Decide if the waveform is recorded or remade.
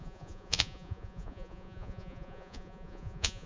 remade